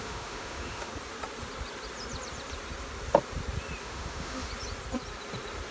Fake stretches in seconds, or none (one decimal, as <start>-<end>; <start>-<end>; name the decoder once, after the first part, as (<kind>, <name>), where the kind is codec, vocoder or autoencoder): 0.0-0.9 (autoencoder, DAC-VAE); 3.8-4.5